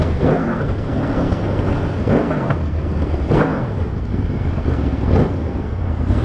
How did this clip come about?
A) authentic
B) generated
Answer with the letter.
B